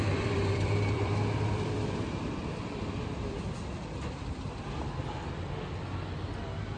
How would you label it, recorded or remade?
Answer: remade